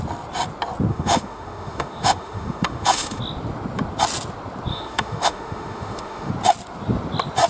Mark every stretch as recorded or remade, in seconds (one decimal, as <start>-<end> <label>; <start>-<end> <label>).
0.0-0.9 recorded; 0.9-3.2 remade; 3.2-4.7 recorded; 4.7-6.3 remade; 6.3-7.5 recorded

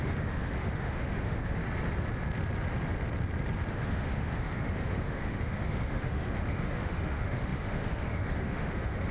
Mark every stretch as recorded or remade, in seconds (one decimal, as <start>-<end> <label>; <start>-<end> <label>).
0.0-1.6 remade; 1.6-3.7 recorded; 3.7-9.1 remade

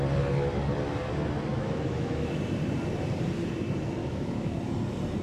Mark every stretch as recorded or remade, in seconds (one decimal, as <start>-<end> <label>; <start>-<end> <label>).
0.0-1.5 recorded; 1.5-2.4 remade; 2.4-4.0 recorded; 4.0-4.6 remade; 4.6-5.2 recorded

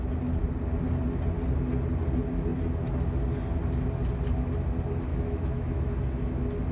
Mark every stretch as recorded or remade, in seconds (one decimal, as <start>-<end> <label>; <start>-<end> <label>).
0.0-5.1 recorded; 5.1-5.9 remade; 5.9-6.7 recorded